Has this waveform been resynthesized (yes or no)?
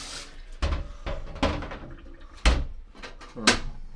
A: no